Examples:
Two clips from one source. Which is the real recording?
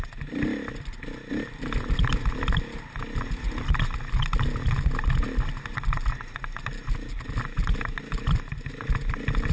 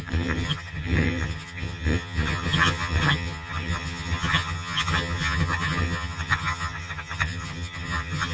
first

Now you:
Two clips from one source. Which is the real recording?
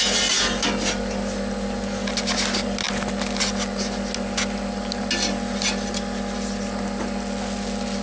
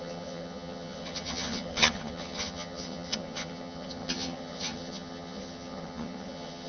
first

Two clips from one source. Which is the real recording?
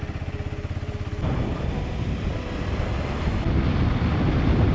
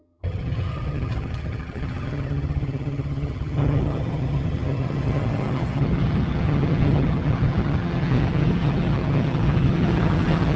first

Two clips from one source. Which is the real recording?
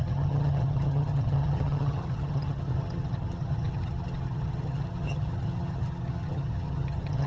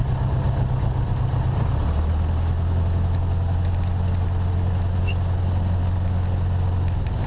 second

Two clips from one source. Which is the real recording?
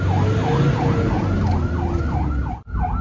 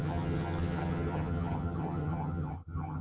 first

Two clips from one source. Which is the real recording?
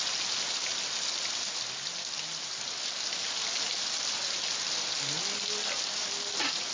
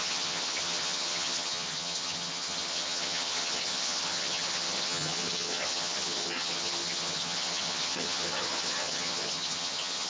first